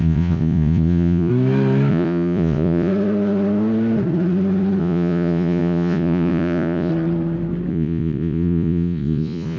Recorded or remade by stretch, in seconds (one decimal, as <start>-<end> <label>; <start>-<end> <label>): 0.0-1.3 remade; 1.3-1.9 recorded; 1.9-2.9 remade; 2.9-4.8 recorded; 4.8-6.9 remade; 6.9-7.7 recorded; 7.7-9.6 remade